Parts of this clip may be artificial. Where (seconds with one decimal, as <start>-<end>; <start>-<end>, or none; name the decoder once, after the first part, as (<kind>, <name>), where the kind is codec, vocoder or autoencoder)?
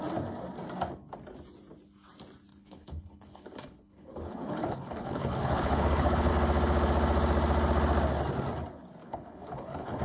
2.5-6.3 (codec, HILCodec); 9.0-10.0